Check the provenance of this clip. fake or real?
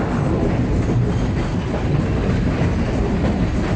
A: real